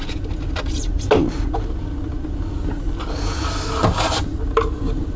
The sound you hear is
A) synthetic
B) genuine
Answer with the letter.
B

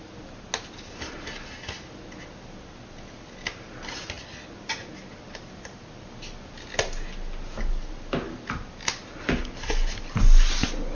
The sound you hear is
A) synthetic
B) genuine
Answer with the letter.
B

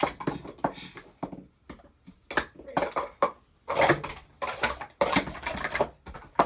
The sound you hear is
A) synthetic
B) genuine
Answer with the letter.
B